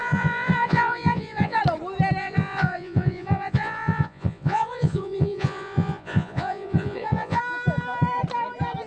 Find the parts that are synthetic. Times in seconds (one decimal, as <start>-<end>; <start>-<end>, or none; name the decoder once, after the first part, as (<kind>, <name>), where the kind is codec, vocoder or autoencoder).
0.0-1.6 (vocoder, Vocos); 2.2-7.4